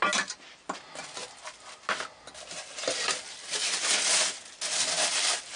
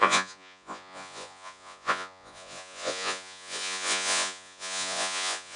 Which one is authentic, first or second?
first